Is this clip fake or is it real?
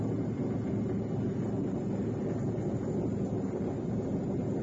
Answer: real